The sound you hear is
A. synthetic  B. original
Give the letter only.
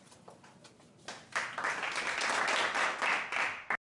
B